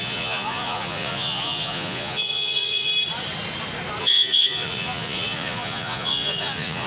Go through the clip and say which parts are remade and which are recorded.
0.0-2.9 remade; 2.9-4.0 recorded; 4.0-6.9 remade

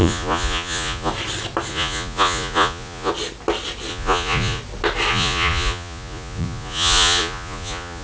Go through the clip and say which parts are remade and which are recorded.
0.0-1.1 remade; 1.1-1.7 recorded; 1.7-3.1 remade; 3.1-3.9 recorded; 3.9-4.6 remade; 4.6-5.1 recorded; 5.1-8.0 remade

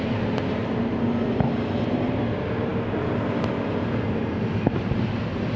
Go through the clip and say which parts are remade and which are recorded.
0.0-5.6 recorded

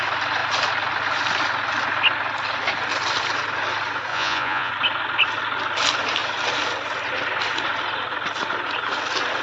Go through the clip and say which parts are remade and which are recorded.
0.0-4.1 recorded; 4.1-4.7 remade; 4.7-9.4 recorded

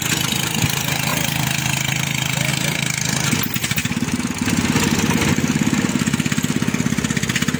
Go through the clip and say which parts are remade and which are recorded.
0.0-1.1 recorded; 1.1-2.5 remade; 2.5-7.6 recorded

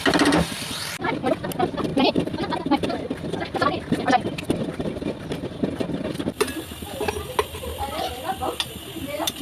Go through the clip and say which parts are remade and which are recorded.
0.0-9.4 recorded

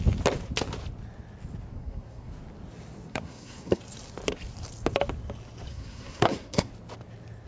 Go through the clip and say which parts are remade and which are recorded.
0.0-1.7 recorded; 1.7-2.3 remade; 2.3-3.1 recorded; 3.1-3.8 remade; 3.8-5.7 recorded; 5.7-6.7 remade; 6.7-7.5 recorded